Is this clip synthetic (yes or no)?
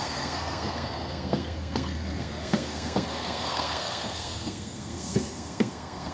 yes